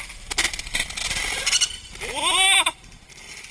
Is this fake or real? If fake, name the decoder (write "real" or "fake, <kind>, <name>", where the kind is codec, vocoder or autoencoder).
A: real